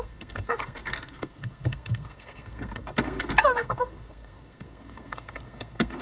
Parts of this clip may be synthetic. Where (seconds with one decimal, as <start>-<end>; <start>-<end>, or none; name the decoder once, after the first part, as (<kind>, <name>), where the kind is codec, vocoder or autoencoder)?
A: 0.0-6.0 (codec, SNAC)

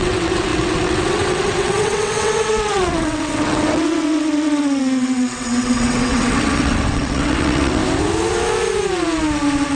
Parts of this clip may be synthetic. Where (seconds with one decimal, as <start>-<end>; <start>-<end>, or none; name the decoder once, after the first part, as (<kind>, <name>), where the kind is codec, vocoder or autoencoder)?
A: 0.0-7.8 (vocoder, WaveNeXt)

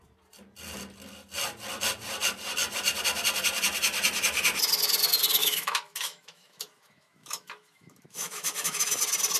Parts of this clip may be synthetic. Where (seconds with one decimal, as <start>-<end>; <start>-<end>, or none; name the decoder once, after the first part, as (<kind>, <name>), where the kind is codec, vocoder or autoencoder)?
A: 5.4-9.0 (autoencoder, DAC-VAE)

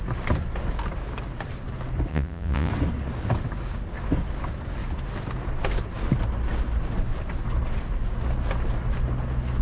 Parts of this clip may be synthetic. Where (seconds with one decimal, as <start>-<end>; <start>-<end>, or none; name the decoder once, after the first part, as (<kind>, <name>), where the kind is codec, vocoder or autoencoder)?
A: 2.1-2.7 (vocoder, Vocos)

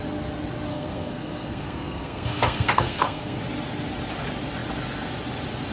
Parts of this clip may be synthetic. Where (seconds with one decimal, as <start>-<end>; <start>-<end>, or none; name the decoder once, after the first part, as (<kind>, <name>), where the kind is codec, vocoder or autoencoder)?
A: 0.7-3.4 (codec, SNAC)